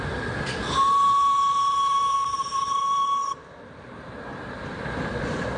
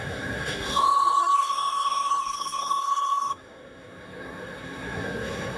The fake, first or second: second